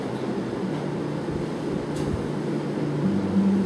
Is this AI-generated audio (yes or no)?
no